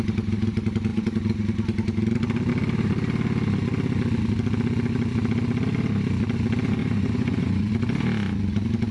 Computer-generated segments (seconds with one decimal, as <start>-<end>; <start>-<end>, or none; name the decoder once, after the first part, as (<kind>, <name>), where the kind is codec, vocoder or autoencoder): 6.8-7.7 (vocoder, Vocos)

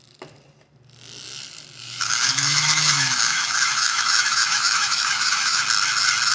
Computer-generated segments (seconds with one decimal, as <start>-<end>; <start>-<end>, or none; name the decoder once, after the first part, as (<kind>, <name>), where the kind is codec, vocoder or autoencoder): 1.8-5.6 (autoencoder, DAC-VAE)

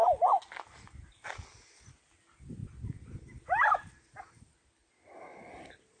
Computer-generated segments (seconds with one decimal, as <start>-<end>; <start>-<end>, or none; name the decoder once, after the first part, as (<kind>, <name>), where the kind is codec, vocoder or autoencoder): none

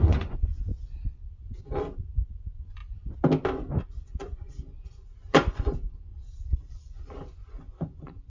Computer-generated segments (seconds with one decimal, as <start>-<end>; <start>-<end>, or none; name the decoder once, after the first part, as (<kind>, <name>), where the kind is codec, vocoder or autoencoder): 0.0-0.7 (vocoder, Vocos); 1.6-2.8; 3.9-6.1; 6.7-8.3